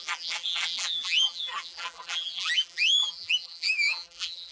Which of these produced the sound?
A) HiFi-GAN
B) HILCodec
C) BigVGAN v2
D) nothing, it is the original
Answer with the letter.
C